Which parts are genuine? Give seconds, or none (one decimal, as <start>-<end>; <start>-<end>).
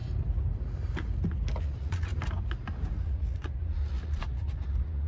0.0-1.6; 2.1-2.9